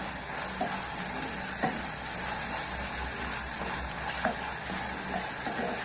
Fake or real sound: real